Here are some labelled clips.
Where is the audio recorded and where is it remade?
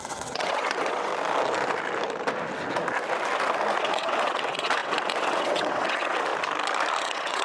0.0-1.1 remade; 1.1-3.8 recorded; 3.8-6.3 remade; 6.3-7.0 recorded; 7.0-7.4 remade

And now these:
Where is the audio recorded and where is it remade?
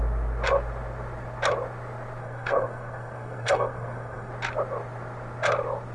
0.0-2.2 recorded; 2.2-4.3 remade; 4.3-5.9 recorded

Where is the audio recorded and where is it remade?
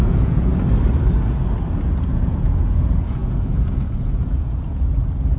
0.0-0.5 remade; 0.5-2.1 recorded; 2.1-5.4 remade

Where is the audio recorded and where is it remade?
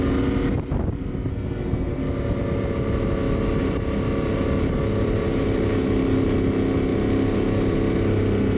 0.0-1.3 recorded; 1.3-2.0 remade; 2.0-8.6 recorded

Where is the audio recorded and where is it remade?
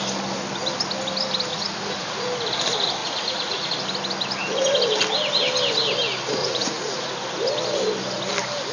0.0-1.5 recorded; 1.5-2.2 remade; 2.2-3.0 recorded; 3.0-3.7 remade; 3.7-6.4 recorded; 6.4-7.1 remade; 7.1-8.7 recorded